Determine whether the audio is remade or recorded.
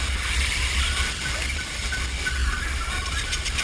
recorded